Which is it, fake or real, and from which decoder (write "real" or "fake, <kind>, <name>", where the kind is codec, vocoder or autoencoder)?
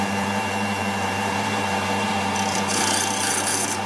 fake, vocoder, BigVGAN v2